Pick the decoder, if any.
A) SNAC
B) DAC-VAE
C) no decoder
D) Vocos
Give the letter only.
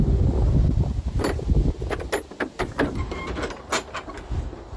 C